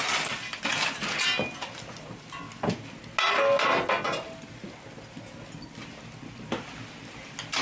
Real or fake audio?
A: real